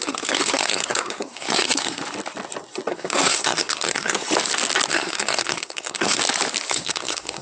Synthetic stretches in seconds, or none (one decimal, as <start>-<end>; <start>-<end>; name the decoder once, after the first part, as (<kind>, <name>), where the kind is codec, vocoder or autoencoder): 0.0-2.0 (codec, SNAC); 2.9-4.2; 4.9-6.2; 6.7-7.4